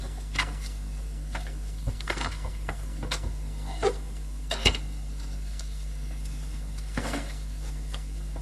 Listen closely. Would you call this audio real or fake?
fake